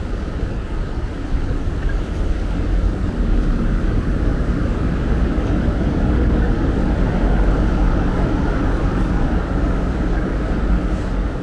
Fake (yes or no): yes